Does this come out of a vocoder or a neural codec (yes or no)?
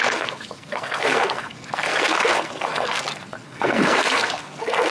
yes